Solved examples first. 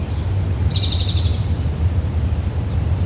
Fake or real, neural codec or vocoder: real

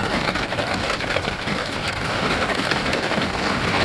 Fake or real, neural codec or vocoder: fake, codec, DAC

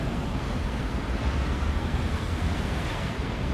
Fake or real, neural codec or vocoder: fake, codec, SNAC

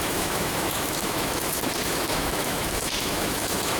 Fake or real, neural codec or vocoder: fake, autoencoder, DAC-VAE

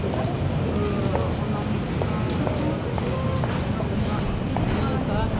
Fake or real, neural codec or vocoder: real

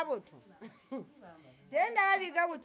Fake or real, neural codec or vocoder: fake, autoencoder, DAC-VAE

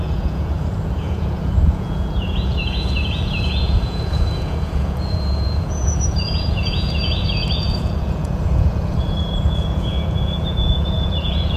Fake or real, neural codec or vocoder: fake, vocoder, Vocos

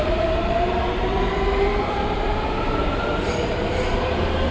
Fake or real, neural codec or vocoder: fake, vocoder, BigVGAN v2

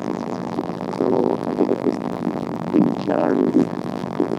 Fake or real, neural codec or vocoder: fake, vocoder, BigVGAN v2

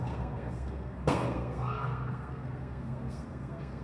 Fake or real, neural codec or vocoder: fake, codec, SNAC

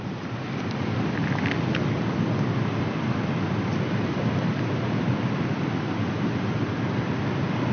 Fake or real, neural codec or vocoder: real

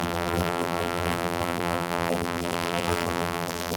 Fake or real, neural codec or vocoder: fake, vocoder, BigVGAN v2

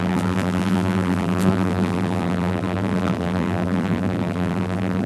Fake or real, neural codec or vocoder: fake, vocoder, BigVGAN v2